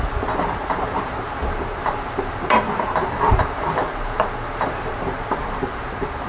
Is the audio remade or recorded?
remade